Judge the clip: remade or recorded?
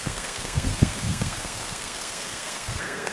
remade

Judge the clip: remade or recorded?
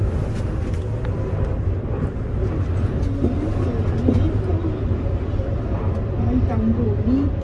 recorded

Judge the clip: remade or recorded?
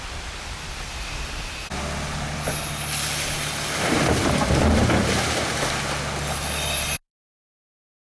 recorded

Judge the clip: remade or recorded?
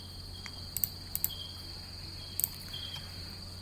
recorded